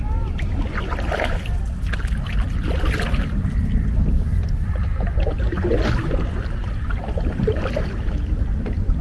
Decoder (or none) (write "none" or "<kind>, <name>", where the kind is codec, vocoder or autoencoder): none